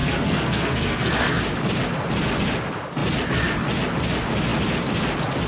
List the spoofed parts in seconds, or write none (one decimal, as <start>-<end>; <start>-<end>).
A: 0.0-1.4